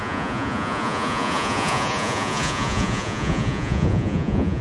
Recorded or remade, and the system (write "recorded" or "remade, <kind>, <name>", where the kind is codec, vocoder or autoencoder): remade, vocoder, Vocos